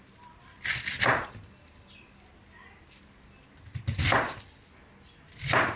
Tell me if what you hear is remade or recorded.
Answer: recorded